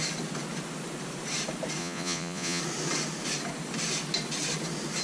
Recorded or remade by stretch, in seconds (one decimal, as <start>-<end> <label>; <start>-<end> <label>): 0.0-1.8 recorded; 1.8-2.6 remade; 2.6-5.0 recorded